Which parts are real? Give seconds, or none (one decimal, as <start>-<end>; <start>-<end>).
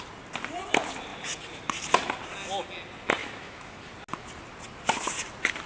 0.0-3.2; 3.8-5.7